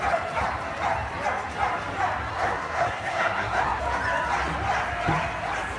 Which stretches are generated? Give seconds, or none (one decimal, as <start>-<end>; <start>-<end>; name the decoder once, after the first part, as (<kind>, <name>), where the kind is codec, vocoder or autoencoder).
2.3-3.8 (codec, SNAC)